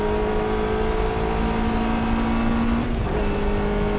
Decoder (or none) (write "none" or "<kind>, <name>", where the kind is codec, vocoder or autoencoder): none